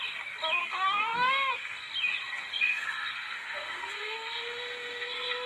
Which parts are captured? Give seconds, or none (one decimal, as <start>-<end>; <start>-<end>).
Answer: 0.0-0.6; 1.9-2.5